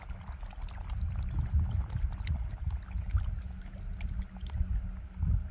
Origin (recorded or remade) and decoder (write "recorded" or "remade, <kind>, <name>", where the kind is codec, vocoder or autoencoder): recorded